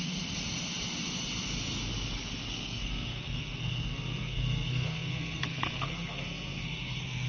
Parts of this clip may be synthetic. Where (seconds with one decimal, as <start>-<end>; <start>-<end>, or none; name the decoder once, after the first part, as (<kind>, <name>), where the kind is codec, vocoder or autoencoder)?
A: 2.5-7.3 (codec, SNAC)

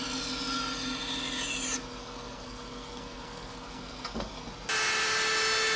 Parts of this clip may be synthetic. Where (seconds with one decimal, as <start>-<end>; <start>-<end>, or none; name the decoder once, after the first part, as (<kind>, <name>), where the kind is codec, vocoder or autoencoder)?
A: 2.0-4.5 (codec, SNAC)

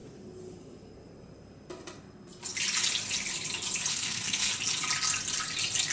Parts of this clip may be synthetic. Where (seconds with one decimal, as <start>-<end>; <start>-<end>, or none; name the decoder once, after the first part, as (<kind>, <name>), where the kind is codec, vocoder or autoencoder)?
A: 3.9-4.5 (codec, SNAC)

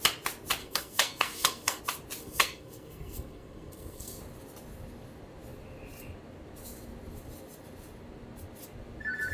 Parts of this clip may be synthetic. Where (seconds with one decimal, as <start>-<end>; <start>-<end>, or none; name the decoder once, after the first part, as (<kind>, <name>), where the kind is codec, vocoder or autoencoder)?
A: 0.6-1.8 (codec, SNAC); 2.2-4.2

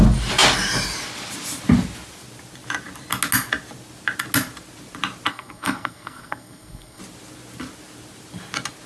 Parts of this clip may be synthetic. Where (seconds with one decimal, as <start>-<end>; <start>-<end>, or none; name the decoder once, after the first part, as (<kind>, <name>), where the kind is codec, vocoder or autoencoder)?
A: 5.3-7.0 (codec, SNAC)

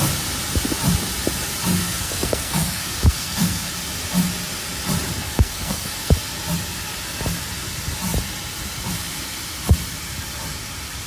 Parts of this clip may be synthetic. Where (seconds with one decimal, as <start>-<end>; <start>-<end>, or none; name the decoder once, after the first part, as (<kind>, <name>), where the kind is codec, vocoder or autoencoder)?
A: 1.8-3.7 (codec, SNAC); 5.2-6.1

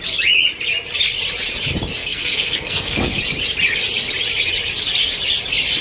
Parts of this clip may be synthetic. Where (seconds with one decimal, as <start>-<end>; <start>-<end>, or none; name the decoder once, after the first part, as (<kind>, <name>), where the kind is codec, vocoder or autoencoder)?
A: 2.0-3.2 (codec, SNAC)